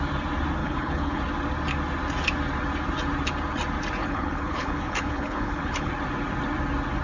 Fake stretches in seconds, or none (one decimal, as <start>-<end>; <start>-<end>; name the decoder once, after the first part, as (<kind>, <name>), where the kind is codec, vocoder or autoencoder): 0.6-1.2 (codec, HILCodec); 4.0-5.9